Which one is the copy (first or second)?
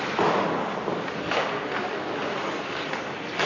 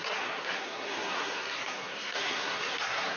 second